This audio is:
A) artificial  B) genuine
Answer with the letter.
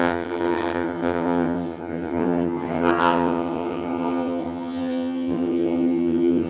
A